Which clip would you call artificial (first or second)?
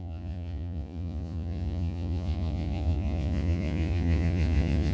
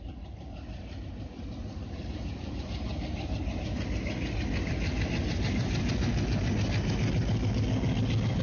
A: first